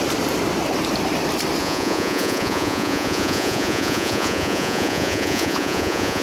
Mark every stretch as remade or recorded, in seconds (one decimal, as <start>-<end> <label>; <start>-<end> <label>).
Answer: 0.0-1.6 recorded; 1.6-6.2 remade